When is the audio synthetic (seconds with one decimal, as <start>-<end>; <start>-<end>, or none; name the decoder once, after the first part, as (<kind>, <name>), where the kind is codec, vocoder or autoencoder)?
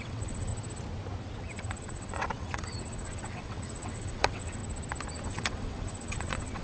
0.0-0.5 (vocoder, WaveNeXt); 1.4-4.6; 5.2-6.6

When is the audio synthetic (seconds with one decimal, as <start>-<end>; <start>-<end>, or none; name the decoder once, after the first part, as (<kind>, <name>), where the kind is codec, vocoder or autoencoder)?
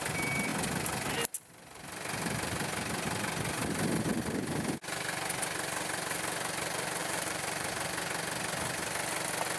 7.0-7.7 (vocoder, BigVGAN v2)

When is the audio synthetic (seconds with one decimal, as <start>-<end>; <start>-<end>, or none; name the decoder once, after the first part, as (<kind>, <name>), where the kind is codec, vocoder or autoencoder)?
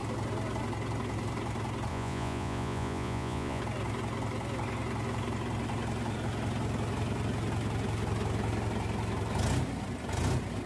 1.9-3.6 (vocoder, Vocos)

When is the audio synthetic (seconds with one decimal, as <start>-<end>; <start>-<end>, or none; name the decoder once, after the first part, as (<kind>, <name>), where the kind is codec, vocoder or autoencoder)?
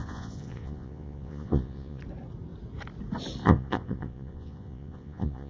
0.0-2.0 (vocoder, Vocos); 3.4-5.5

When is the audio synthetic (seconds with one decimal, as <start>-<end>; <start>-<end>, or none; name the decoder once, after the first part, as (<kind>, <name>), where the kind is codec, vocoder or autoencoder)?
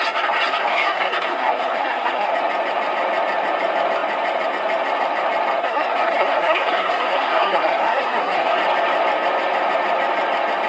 0.7-2.3 (codec, SNAC); 5.6-8.5